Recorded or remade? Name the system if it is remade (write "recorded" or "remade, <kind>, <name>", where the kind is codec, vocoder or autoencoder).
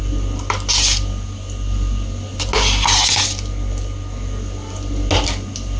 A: recorded